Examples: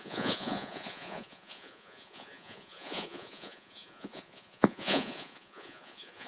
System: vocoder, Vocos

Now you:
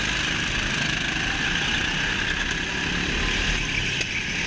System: none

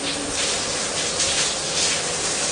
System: none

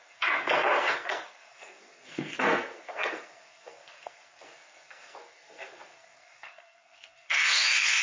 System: codec, SNAC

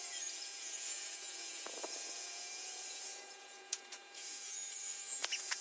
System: vocoder, Vocos